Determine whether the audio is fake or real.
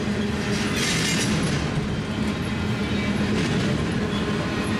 real